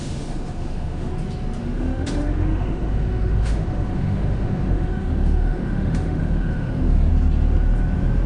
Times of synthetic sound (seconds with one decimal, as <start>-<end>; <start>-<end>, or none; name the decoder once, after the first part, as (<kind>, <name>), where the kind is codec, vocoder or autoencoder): 0.0-1.1 (autoencoder, DAC-VAE); 1.6-7.1